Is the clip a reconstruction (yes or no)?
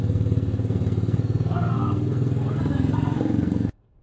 yes